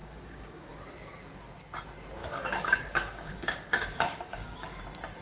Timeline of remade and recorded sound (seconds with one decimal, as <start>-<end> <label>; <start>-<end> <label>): 0.0-0.7 remade; 0.7-2.2 recorded; 2.2-4.8 remade; 4.8-5.2 recorded

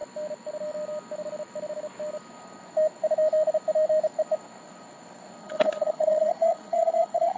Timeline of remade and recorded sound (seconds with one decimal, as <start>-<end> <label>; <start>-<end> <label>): 0.0-5.4 recorded; 5.4-7.4 remade

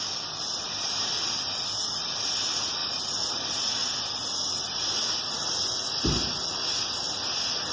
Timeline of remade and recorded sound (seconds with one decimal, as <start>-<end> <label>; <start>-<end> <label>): 0.0-7.7 recorded

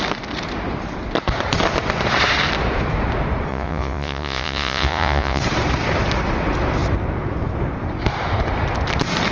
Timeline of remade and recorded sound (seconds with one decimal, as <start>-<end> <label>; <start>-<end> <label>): 0.0-3.5 recorded; 3.5-5.4 remade; 5.4-9.3 recorded

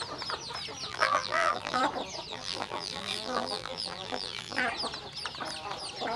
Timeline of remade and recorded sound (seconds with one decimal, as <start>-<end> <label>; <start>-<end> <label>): 0.0-0.9 recorded; 0.9-1.8 remade; 1.8-2.3 recorded; 2.3-4.6 remade; 4.6-6.2 recorded

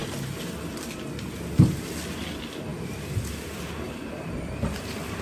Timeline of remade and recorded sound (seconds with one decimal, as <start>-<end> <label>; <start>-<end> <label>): 0.0-2.3 recorded; 2.3-5.2 remade